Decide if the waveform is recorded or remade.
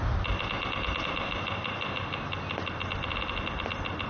recorded